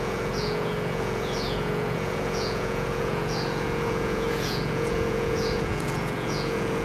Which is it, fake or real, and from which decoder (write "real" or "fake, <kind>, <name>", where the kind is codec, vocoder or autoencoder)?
fake, vocoder, Vocos